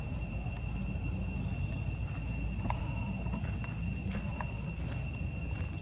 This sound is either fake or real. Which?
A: real